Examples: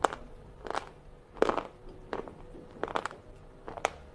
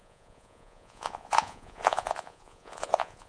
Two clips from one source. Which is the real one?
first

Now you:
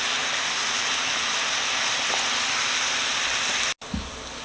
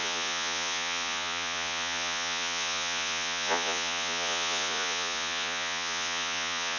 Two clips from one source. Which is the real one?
first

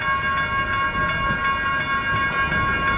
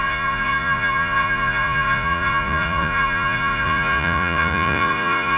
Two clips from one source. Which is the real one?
first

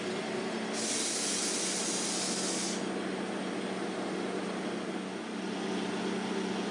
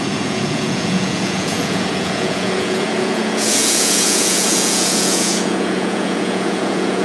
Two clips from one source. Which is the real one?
first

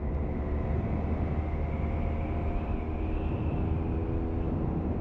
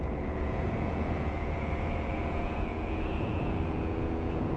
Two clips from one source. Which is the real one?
first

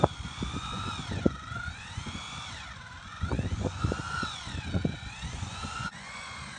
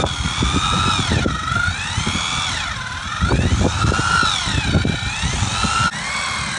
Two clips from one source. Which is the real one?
second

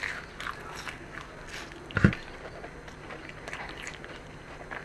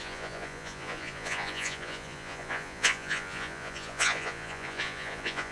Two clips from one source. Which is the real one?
first